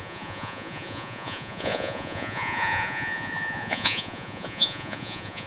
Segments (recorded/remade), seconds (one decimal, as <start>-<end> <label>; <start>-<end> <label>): 0.0-5.5 remade